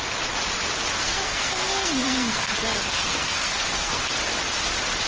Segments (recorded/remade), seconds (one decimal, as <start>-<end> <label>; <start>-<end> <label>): 0.0-1.0 recorded; 1.0-4.1 remade; 4.1-5.1 recorded

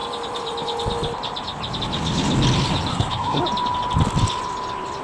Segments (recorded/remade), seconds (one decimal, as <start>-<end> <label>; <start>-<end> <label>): 0.0-2.9 recorded; 2.9-3.4 remade; 3.4-5.0 recorded

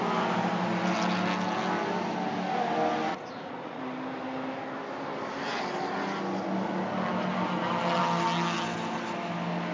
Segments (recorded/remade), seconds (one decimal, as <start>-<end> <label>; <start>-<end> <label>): 0.0-3.1 recorded; 3.1-3.8 remade; 3.8-9.7 recorded

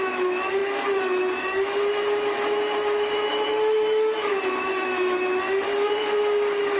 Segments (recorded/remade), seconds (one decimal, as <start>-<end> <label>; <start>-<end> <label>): 0.0-6.8 remade

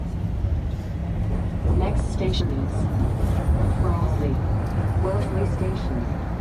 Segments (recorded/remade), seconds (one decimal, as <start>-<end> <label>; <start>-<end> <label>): 0.0-3.6 recorded; 3.6-4.3 remade; 4.3-6.4 recorded

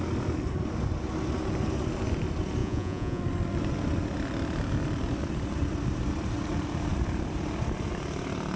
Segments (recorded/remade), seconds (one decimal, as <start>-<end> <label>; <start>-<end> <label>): 0.0-2.6 recorded; 2.6-3.2 remade; 3.2-8.6 recorded

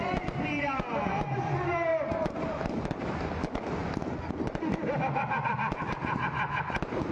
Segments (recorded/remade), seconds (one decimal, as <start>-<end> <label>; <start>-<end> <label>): 0.0-1.9 recorded; 1.9-2.7 remade; 2.7-7.1 recorded